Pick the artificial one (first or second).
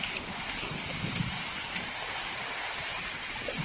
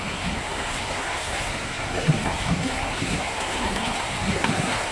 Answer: second